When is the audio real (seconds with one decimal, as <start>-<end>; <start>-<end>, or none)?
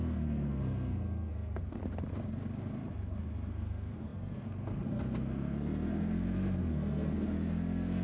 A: 1.8-3.5